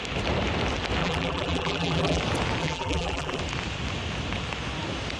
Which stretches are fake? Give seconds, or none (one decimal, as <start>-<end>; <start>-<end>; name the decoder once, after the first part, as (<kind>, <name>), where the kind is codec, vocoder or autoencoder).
1.0-2.2 (vocoder, BigVGAN v2); 2.6-3.4